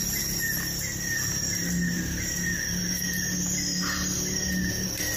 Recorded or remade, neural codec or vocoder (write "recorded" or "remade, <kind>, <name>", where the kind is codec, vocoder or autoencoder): recorded